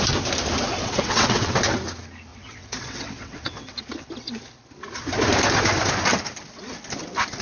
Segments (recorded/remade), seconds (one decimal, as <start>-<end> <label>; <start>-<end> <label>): 0.0-0.8 recorded; 0.8-1.6 remade; 1.6-2.3 recorded; 2.3-3.8 remade; 3.8-7.4 recorded